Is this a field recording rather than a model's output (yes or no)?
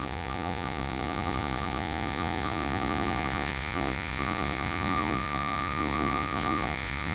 no